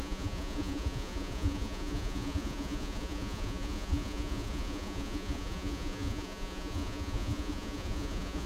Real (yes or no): no